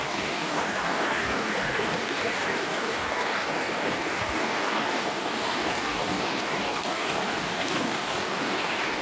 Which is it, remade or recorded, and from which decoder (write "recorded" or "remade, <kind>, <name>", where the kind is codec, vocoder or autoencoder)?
remade, codec, DAC